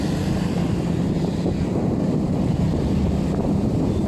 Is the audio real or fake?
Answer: real